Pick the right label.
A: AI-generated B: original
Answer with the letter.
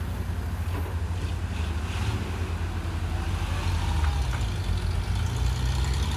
B